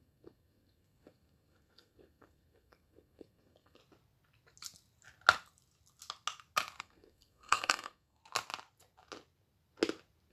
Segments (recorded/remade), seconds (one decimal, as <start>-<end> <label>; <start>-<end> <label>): 0.0-3.8 remade; 3.8-6.8 recorded; 6.8-8.2 remade; 8.2-10.3 recorded